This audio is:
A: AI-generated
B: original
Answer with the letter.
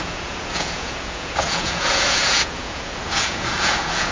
A